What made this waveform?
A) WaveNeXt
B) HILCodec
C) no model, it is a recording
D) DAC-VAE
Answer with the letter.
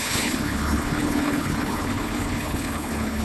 B